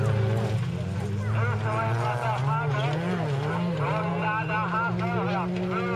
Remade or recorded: recorded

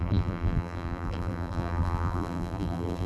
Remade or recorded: remade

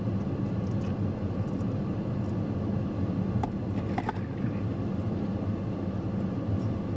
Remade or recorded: recorded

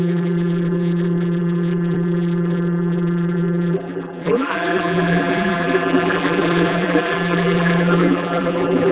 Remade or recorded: remade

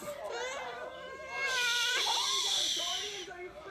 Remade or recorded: recorded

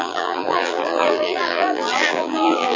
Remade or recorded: remade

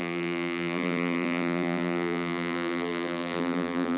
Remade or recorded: remade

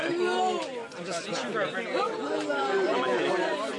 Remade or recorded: remade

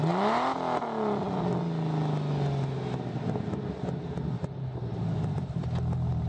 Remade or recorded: recorded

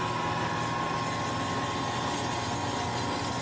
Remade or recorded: recorded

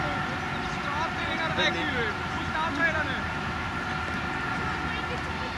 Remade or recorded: recorded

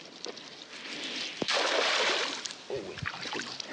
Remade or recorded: remade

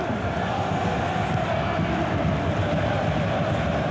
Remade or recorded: recorded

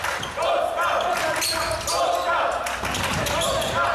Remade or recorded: recorded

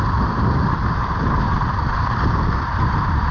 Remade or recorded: remade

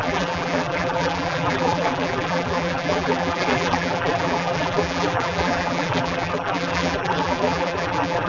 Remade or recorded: remade